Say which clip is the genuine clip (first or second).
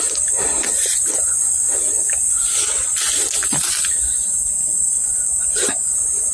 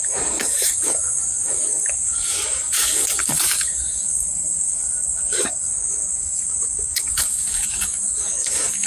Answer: first